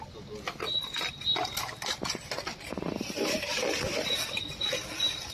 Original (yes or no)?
yes